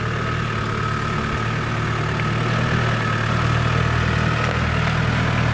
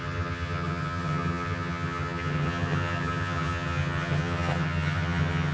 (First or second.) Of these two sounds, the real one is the first